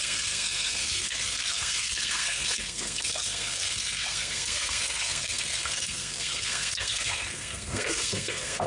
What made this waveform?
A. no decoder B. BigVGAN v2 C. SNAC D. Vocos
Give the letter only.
C